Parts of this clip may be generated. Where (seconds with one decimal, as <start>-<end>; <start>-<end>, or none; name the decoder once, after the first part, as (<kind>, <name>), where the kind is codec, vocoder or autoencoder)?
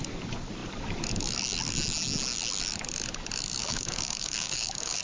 3.6-5.0 (codec, DAC)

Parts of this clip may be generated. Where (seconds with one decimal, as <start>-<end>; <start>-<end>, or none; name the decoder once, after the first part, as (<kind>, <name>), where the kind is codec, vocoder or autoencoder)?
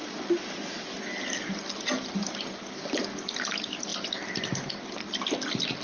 none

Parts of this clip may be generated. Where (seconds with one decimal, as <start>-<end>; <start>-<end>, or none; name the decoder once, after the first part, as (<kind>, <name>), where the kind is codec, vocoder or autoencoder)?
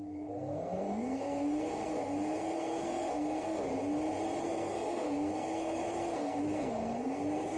0.0-3.7 (codec, SNAC); 4.4-7.6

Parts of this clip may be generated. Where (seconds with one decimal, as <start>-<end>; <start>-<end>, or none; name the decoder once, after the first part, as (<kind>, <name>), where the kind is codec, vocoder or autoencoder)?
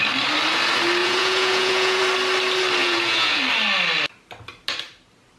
1.0-2.0 (vocoder, Vocos); 2.8-3.4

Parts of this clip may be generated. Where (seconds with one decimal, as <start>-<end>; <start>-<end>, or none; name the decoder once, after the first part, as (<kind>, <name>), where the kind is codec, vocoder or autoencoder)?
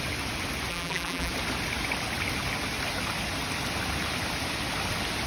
0.7-1.3 (vocoder, BigVGAN v2)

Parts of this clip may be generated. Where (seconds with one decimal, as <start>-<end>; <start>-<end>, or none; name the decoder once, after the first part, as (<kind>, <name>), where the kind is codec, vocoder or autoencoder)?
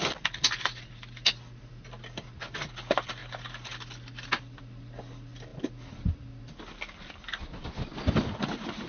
none